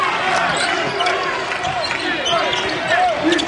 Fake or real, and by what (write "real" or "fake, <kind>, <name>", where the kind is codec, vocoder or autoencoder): real